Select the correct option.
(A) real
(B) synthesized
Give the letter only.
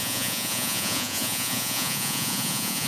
B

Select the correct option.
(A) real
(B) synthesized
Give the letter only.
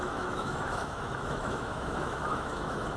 B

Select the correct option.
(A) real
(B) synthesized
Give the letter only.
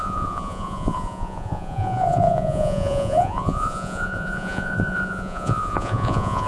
B